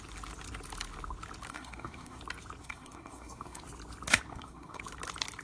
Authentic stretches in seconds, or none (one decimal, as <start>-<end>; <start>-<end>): 0.0-1.5; 2.2-2.6; 3.6-4.3; 4.8-5.4